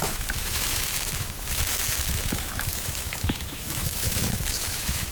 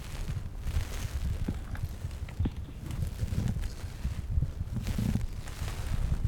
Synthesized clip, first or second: first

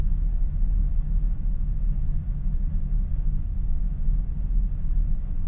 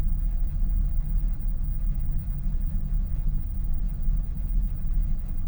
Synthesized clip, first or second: second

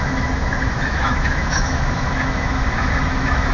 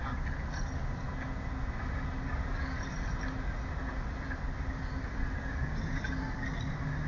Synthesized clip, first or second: first